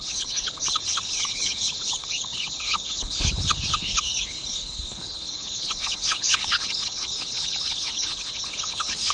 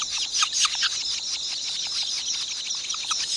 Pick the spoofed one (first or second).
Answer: first